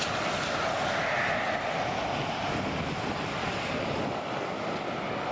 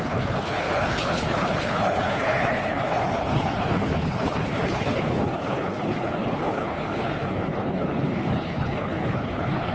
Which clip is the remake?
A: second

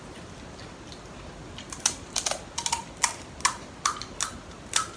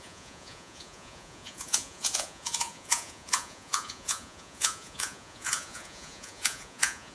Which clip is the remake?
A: second